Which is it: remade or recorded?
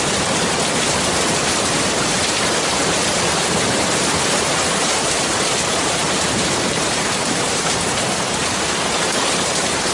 remade